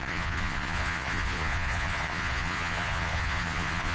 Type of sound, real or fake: fake